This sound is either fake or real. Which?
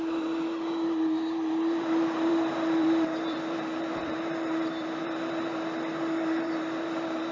fake